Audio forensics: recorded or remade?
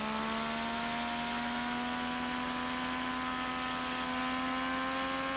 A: recorded